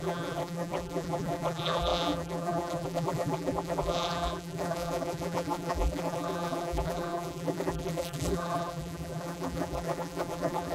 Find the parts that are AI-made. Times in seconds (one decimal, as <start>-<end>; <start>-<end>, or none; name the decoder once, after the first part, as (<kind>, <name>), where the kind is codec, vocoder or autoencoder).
0.0-10.7 (vocoder, BigVGAN v2)